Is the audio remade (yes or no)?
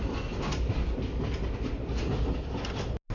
no